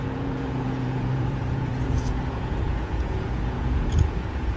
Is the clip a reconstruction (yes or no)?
yes